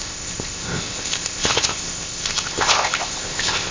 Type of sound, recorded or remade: remade